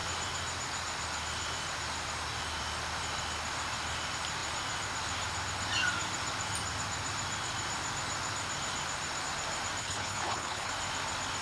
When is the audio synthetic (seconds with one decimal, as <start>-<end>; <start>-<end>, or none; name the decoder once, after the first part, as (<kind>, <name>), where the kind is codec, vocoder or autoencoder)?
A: 9.8-10.7 (codec, HILCodec)